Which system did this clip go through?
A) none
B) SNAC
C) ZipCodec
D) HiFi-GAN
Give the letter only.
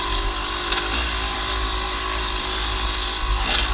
A